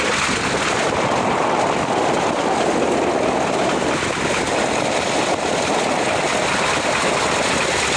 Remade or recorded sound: recorded